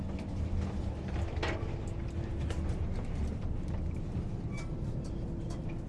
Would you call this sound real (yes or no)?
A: yes